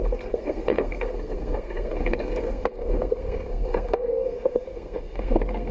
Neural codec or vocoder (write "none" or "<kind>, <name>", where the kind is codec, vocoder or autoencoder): codec, SNAC